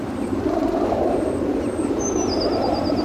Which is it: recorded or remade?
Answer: remade